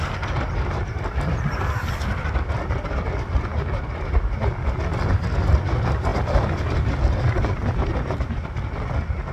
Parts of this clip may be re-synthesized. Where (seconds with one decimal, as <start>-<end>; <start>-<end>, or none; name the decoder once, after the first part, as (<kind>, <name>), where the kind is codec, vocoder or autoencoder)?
6.1-8.7 (vocoder, BigVGAN v2)